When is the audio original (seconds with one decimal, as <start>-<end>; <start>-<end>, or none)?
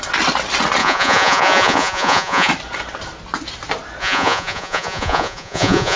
0.0-0.8; 2.5-4.0